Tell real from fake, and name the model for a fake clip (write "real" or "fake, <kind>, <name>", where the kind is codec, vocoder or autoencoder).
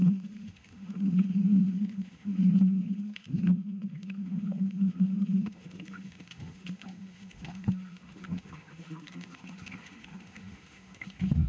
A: fake, autoencoder, DAC-VAE